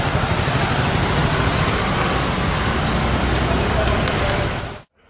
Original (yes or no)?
yes